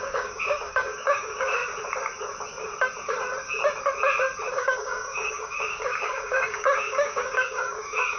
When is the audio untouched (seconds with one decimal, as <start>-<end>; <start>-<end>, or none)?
1.6-4.5